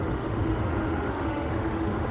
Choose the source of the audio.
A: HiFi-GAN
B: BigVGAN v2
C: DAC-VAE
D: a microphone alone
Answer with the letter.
C